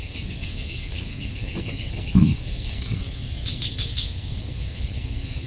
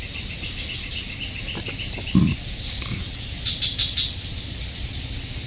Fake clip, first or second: first